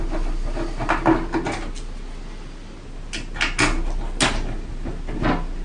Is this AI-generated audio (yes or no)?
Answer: no